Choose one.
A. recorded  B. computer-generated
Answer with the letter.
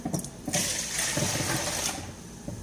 A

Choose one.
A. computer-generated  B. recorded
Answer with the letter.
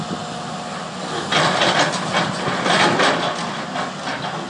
B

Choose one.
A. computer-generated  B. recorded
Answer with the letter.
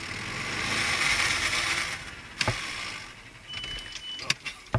B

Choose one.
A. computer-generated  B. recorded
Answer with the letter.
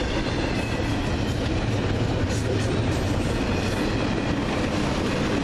B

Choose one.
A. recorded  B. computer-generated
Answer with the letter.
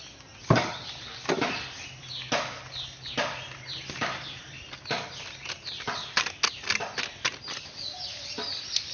A